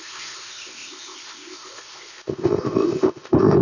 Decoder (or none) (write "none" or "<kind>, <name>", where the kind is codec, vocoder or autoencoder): codec, ZipCodec